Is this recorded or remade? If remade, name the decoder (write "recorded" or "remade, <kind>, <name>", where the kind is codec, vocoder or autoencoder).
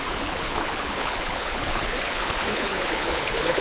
remade, codec, HILCodec